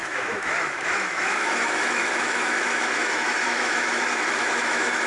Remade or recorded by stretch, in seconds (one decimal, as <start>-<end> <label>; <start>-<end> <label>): 0.0-5.1 remade